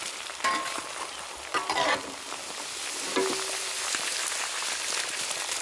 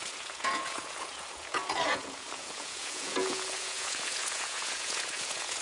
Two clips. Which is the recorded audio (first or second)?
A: first